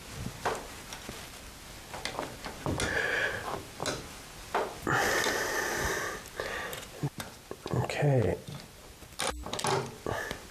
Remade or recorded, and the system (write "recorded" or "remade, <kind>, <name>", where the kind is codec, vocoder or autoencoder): recorded